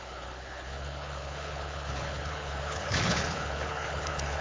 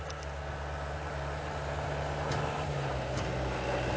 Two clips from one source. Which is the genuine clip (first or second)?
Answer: second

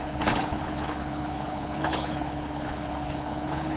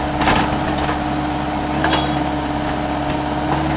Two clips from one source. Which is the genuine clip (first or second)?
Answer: second